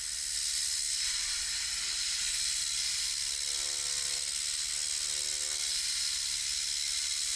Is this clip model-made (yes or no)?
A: no